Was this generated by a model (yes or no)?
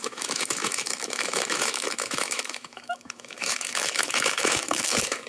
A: yes